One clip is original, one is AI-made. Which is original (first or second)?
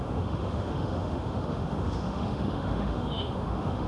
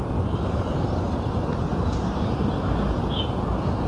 second